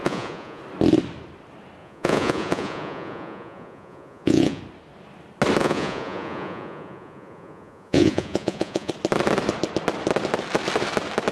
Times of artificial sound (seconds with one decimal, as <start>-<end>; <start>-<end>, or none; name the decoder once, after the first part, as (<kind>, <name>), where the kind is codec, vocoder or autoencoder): 0.0-0.6 (vocoder, Vocos); 1.8-4.6; 5.6-8.9